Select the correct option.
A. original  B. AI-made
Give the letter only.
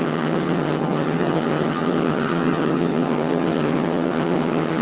B